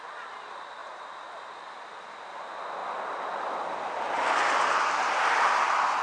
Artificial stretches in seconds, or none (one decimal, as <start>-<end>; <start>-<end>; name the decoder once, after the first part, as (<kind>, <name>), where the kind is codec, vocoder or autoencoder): 2.8-4.8 (vocoder, BigVGAN v2)